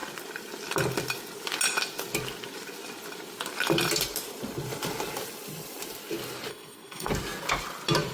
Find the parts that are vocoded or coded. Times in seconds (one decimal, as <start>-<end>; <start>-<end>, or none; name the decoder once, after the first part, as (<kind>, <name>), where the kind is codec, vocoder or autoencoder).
6.5-7.1 (codec, SNAC)